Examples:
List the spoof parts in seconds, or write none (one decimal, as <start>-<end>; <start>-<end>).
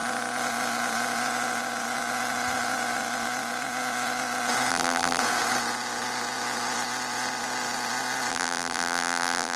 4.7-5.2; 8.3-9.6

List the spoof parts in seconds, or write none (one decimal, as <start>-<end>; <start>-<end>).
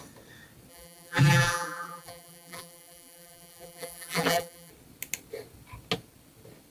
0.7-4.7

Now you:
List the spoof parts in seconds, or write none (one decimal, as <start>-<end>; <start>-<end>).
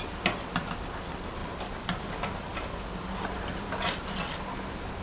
1.4-2.1; 2.5-4.2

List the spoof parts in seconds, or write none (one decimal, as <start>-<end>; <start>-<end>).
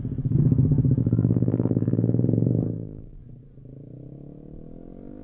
1.0-3.2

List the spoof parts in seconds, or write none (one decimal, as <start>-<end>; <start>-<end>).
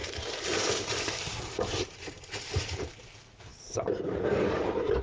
0.0-3.0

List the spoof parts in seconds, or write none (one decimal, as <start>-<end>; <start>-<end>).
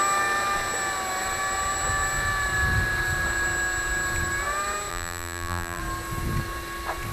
4.9-5.8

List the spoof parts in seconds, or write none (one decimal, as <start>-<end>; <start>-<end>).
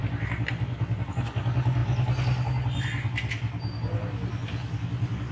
none